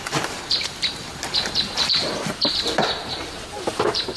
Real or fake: fake